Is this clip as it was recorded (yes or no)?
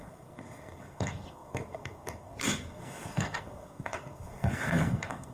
no